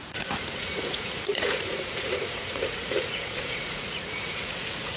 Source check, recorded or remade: remade